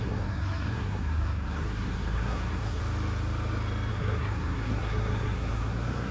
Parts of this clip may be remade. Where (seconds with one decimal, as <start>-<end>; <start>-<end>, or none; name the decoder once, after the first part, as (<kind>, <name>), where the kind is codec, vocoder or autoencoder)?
0.0-2.8 (codec, SNAC); 3.9-6.1